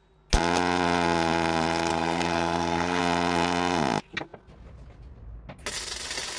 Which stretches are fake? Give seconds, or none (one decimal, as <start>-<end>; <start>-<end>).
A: 1.9-3.0